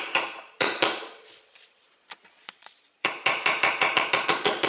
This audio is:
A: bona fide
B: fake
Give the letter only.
B